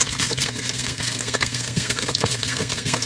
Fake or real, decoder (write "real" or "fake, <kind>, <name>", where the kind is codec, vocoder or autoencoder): fake, codec, SNAC